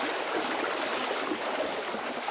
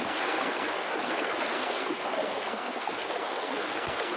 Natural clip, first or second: first